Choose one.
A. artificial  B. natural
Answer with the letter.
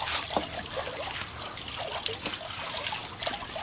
B